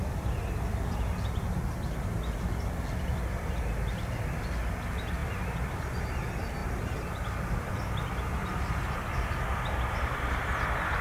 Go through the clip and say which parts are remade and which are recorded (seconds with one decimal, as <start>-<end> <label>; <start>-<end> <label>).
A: 0.0-6.6 recorded; 6.6-7.7 remade; 7.7-8.4 recorded; 8.4-9.1 remade; 9.1-11.0 recorded